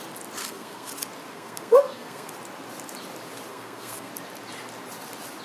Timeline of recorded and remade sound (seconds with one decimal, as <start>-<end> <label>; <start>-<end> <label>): 0.0-0.4 recorded; 0.4-0.9 remade; 0.9-1.3 recorded; 1.3-2.3 remade; 2.3-3.5 recorded; 3.5-4.1 remade; 4.1-5.4 recorded